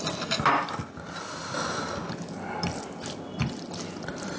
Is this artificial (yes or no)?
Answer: no